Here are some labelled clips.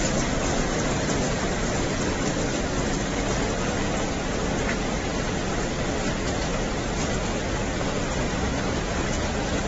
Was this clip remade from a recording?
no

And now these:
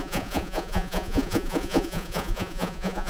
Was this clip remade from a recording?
yes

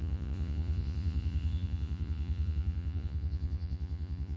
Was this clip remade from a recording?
yes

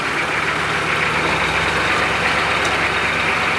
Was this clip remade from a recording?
no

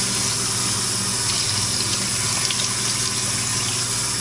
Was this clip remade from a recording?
no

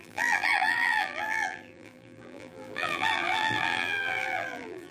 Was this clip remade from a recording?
yes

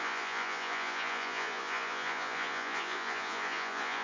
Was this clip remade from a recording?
yes